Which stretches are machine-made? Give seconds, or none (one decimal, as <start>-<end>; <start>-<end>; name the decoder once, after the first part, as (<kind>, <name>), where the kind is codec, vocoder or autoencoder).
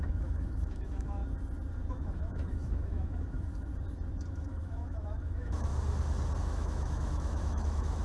0.0-1.2 (autoencoder, DAC-VAE); 1.9-3.7; 4.3-5.7; 6.4-8.0